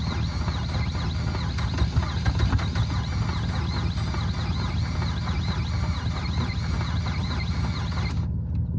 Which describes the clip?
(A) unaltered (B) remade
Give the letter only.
A